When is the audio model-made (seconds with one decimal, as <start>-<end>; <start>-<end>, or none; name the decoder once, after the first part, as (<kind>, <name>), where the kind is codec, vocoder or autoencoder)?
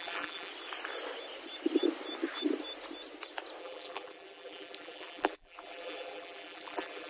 0.0-0.5 (vocoder, BigVGAN v2); 3.6-7.1